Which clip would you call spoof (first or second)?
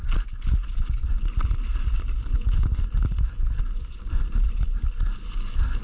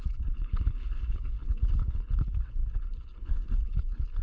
second